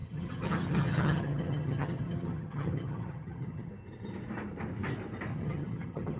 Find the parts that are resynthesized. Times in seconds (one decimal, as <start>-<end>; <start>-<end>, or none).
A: 0.0-3.7; 5.3-6.2